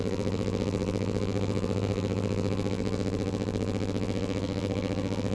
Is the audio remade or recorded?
remade